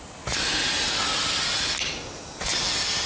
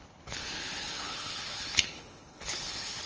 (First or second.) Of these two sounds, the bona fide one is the first